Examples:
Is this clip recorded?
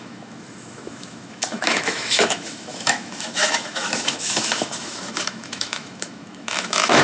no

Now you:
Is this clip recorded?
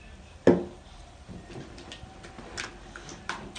yes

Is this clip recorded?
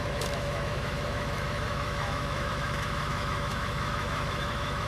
no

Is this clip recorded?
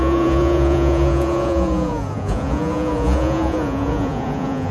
no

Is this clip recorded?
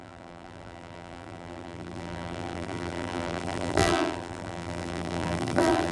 no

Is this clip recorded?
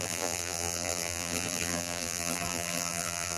no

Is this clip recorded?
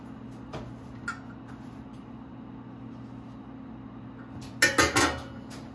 yes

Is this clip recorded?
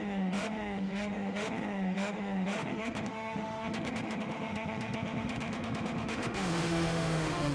no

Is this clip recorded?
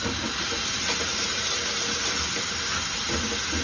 yes